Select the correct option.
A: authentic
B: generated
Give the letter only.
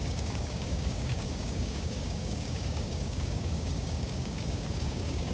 B